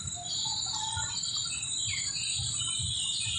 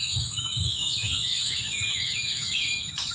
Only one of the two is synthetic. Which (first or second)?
second